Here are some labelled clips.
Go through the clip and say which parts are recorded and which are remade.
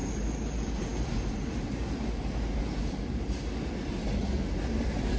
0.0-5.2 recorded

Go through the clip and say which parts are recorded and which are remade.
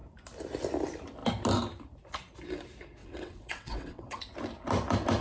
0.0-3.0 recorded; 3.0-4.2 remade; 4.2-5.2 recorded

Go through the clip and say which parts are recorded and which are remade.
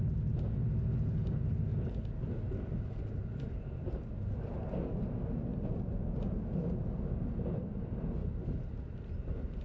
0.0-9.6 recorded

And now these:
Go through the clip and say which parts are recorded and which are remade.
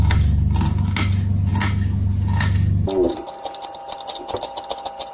0.0-5.1 recorded